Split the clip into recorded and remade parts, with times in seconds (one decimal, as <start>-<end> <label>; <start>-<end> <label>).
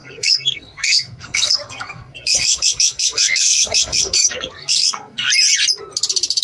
0.0-5.3 remade; 5.3-6.4 recorded